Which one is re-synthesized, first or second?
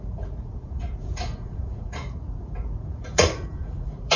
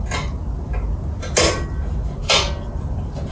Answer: first